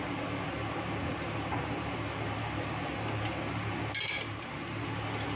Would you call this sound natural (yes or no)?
yes